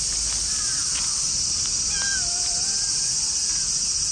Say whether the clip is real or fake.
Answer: real